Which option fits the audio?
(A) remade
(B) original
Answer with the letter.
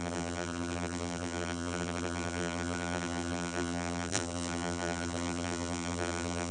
A